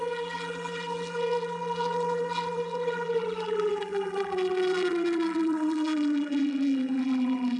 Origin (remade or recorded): remade